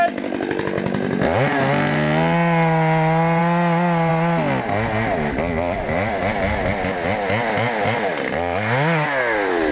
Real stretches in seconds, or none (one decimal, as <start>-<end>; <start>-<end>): 0.0-9.7